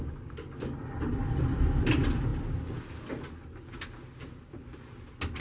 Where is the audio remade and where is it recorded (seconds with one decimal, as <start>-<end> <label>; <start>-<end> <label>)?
0.0-5.4 recorded